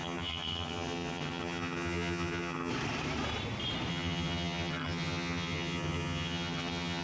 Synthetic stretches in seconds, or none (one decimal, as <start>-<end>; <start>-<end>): 0.0-2.7; 3.9-7.0